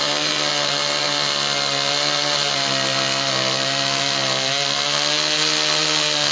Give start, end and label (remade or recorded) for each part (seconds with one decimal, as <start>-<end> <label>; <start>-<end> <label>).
0.0-6.3 recorded